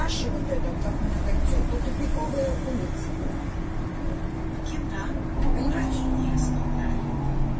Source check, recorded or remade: recorded